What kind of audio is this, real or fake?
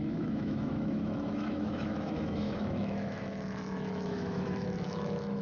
fake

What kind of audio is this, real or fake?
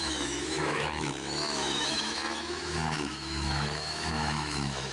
fake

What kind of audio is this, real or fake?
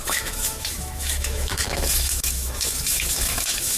fake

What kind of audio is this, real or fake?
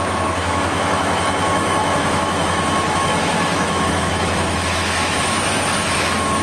fake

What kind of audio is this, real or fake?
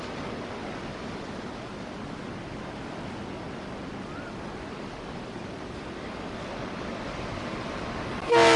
real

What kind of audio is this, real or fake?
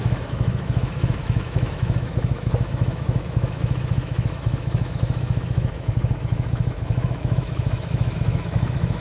fake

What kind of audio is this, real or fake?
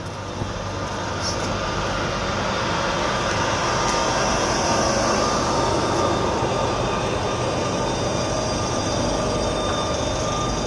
real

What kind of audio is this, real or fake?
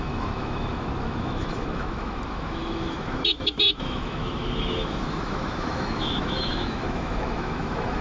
fake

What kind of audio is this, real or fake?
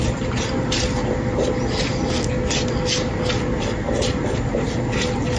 real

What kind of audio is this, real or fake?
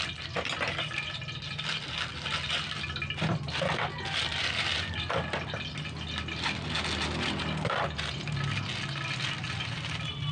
real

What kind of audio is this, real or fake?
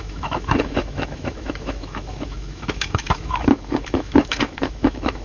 fake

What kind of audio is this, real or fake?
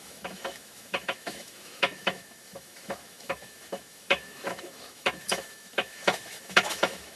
fake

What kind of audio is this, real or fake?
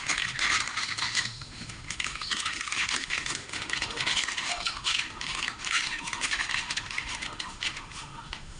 fake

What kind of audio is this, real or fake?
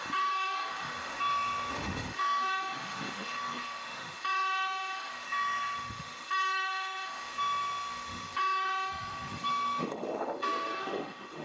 fake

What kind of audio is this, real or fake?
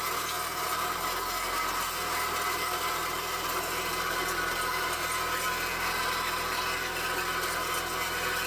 real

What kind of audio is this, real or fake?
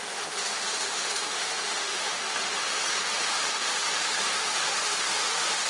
fake